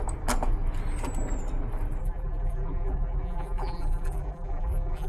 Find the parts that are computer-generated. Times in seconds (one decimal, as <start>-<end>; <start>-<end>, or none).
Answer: 2.0-5.1